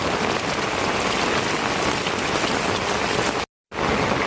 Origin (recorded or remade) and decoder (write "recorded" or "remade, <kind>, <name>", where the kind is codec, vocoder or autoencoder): recorded